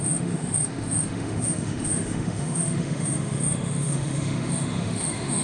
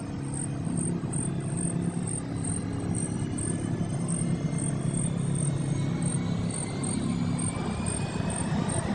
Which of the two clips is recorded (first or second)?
second